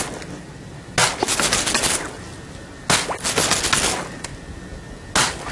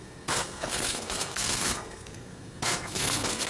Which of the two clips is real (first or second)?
first